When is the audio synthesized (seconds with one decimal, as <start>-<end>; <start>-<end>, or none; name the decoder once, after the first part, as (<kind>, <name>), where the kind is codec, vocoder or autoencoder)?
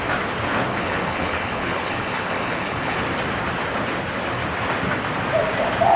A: 0.7-3.0 (codec, HILCodec)